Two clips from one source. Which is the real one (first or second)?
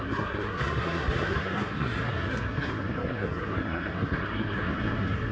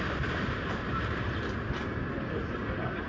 second